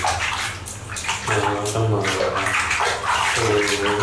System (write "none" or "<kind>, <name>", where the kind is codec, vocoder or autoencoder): none